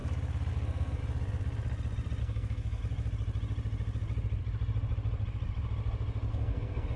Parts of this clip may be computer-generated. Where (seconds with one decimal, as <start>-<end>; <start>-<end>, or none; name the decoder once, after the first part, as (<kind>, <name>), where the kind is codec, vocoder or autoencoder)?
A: 0.5-1.0 (codec, SNAC); 2.2-2.8; 6.3-7.0